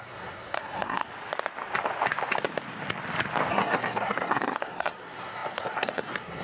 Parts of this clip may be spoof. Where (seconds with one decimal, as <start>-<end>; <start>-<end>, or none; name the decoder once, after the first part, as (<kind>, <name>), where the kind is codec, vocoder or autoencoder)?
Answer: 0.0-1.1 (codec, SNAC); 3.5-6.4

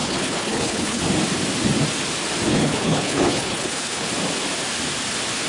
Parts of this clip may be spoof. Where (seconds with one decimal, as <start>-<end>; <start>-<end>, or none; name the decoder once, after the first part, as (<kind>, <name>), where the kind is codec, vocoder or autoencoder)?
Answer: 0.0-1.0 (codec, HILCodec); 2.5-4.1

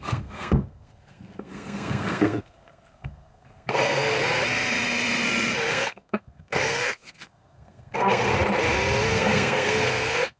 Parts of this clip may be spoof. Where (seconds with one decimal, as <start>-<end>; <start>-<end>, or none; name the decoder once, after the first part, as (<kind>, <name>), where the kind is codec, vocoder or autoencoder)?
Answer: 0.0-4.2 (codec, SNAC); 5.7-8.3; 9.1-10.4

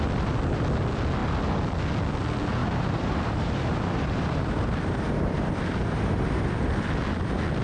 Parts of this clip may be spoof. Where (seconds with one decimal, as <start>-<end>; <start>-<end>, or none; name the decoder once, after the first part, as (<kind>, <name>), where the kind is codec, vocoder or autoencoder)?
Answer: 2.6-6.5 (vocoder, BigVGAN v2)

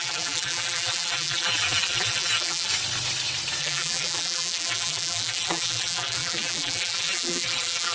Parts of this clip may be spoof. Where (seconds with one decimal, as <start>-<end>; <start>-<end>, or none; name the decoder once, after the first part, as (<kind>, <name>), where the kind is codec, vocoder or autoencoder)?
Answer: 0.0-2.7 (vocoder, BigVGAN v2); 3.6-7.9

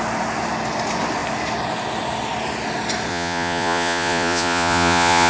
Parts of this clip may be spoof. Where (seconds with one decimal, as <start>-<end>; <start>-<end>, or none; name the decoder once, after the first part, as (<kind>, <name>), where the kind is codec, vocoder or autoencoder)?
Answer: 3.1-5.3 (vocoder, Vocos)

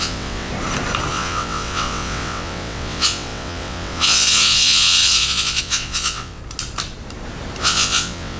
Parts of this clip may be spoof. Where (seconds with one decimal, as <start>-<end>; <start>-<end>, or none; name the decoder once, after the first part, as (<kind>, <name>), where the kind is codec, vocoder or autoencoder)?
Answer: 0.0-0.5 (vocoder, WaveNeXt); 1.1-6.4; 7.6-8.4

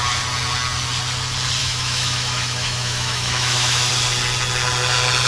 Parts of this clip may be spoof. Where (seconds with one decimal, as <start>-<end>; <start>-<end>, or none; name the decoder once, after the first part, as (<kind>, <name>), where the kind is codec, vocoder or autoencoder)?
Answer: 1.6-3.9 (autoencoder, DAC-VAE)